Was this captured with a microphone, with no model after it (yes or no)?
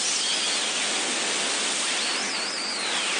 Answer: no